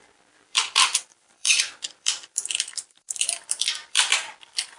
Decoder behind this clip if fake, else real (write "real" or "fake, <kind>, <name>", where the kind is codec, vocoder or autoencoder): fake, vocoder, BigVGAN v2